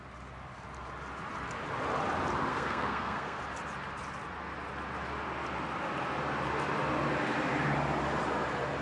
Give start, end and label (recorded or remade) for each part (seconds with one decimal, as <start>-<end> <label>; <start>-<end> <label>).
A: 0.0-2.5 recorded; 2.5-3.4 remade; 3.4-8.8 recorded